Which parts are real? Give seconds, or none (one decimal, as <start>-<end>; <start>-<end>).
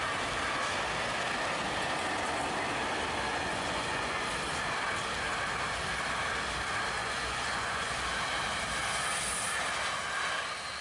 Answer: 0.0-3.3; 4.3-7.0; 8.0-10.8